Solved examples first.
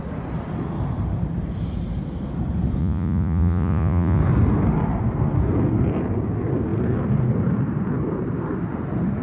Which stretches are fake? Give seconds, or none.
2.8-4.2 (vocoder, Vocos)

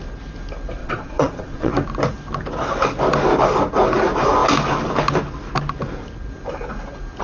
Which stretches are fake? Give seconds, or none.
0.8-1.7 (vocoder, Vocos)

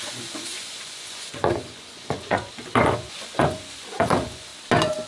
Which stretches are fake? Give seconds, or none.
0.0-4.5 (vocoder, Vocos)

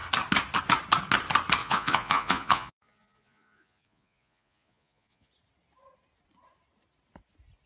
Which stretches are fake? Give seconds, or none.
1.6-5.3 (vocoder, Vocos)

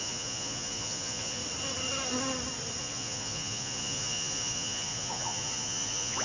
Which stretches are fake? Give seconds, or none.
0.0-1.4 (vocoder, Vocos); 2.8-6.2